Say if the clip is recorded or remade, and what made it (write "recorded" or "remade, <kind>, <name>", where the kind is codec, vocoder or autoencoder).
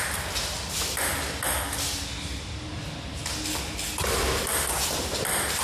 recorded